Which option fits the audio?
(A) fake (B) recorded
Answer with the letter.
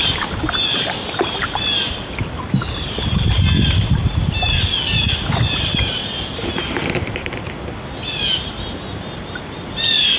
B